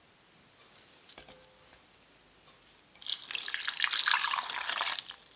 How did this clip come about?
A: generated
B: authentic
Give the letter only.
B